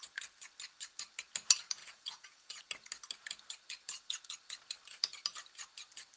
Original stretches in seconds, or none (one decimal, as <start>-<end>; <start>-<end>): 0.0-1.8; 2.6-6.2